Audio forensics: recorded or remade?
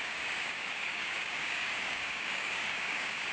remade